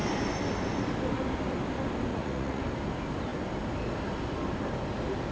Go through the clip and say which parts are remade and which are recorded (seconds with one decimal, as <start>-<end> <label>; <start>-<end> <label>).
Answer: 0.0-2.1 recorded; 2.1-2.6 remade; 2.6-5.3 recorded